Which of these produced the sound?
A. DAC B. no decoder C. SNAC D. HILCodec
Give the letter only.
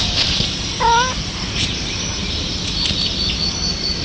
B